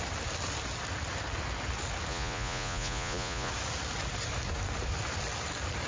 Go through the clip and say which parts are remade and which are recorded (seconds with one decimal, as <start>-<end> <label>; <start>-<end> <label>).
0.0-2.1 recorded; 2.1-3.5 remade; 3.5-5.9 recorded